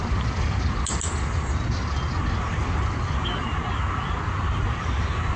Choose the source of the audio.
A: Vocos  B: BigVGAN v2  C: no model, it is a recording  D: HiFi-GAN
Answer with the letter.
C